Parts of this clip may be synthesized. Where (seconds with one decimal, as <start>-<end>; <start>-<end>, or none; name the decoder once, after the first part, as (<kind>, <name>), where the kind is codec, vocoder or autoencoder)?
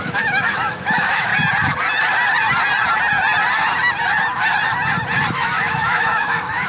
0.0-1.3 (autoencoder, DAC-VAE); 5.3-6.7